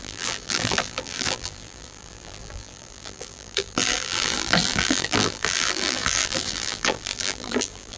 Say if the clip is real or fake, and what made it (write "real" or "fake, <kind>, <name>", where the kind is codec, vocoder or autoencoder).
fake, vocoder, BigVGAN v2